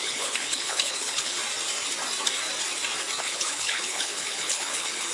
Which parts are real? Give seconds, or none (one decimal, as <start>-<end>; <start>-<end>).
1.4-3.2